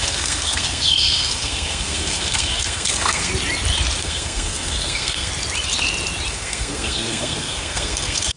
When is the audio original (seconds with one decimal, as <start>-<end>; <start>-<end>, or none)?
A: 3.3-4.0; 5.3-6.3